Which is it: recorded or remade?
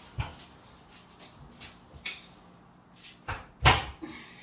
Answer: recorded